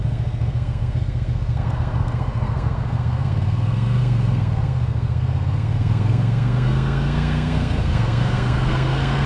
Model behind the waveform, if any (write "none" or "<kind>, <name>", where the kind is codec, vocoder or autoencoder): codec, SNAC